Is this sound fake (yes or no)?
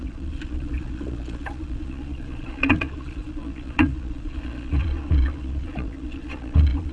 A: yes